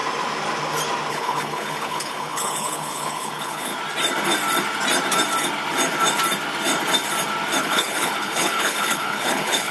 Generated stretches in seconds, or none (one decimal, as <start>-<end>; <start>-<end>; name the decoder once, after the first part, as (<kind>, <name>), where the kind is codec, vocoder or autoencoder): 1.1-3.7 (codec, HILCodec); 7.6-9.7